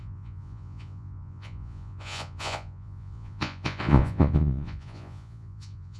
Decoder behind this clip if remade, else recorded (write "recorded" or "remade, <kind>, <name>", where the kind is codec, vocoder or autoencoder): remade, vocoder, Vocos